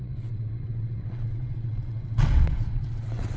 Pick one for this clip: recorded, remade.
remade